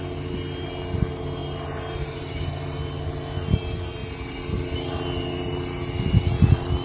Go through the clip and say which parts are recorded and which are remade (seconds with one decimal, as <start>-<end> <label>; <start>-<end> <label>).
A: 0.0-6.8 remade